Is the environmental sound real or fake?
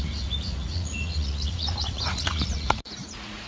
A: fake